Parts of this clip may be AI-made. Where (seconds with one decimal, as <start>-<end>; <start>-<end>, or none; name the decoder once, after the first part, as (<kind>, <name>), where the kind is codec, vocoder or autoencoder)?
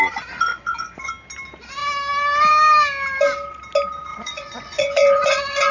0.5-1.1 (vocoder, Vocos); 4.1-5.7